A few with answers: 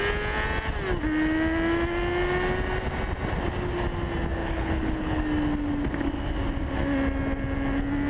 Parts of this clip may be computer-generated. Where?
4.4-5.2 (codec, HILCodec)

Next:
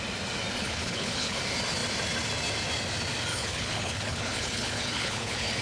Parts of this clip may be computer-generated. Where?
0.6-1.4 (codec, HILCodec); 3.3-5.6

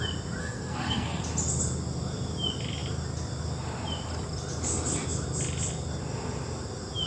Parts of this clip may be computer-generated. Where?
0.4-1.2 (codec, SNAC)

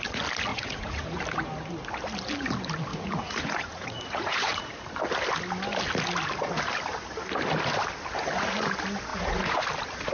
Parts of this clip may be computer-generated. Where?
0.5-1.2 (vocoder, Vocos); 2.9-4.8; 9.1-9.6